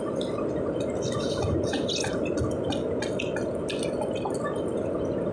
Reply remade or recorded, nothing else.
recorded